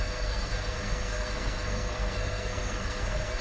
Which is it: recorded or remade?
remade